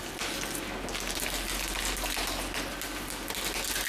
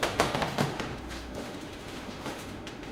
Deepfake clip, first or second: second